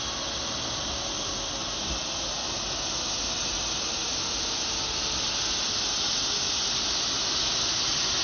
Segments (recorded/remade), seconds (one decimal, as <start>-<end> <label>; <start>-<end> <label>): 0.0-8.2 recorded